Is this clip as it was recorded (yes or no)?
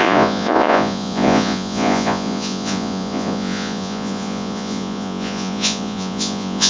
no